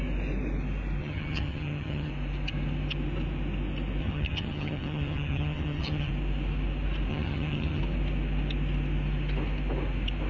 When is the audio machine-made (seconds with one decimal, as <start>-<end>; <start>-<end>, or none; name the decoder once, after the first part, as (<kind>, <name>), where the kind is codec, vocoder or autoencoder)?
1.0-2.1 (vocoder, HiFi-GAN); 4.0-6.1; 7.1-7.8